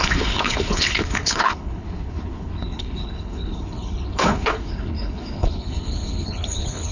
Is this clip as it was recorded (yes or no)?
no